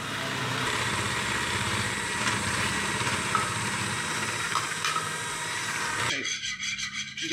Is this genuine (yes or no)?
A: no